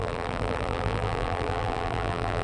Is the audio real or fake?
fake